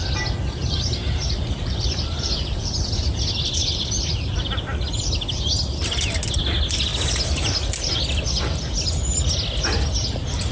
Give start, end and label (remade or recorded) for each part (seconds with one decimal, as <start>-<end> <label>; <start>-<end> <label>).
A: 0.0-0.6 recorded; 0.6-3.1 remade; 3.1-3.6 recorded; 3.6-5.0 remade; 5.0-10.5 recorded